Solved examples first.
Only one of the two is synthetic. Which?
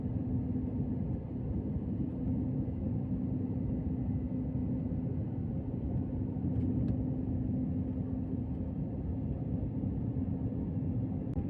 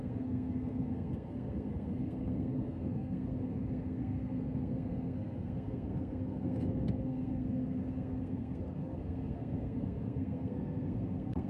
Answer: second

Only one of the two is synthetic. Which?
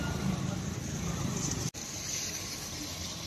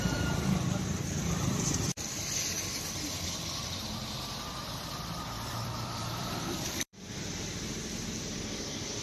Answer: second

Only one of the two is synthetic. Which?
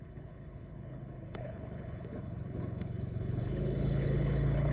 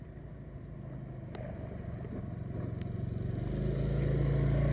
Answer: first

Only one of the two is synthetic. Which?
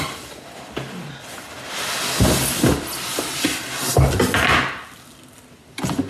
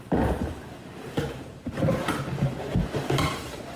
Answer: second